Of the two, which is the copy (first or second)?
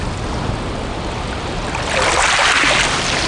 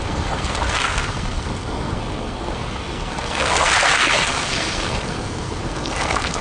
second